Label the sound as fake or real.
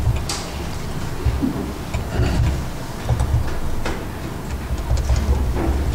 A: real